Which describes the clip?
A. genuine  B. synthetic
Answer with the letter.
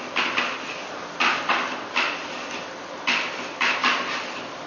A